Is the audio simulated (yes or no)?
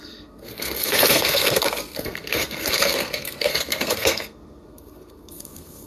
yes